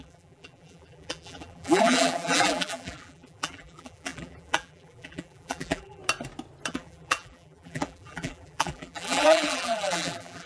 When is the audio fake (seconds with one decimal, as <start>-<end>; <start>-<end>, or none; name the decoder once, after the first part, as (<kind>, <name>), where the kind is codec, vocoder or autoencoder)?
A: 0.0-6.0 (vocoder, BigVGAN v2); 6.7-10.5